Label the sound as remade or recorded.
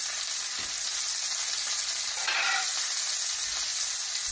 recorded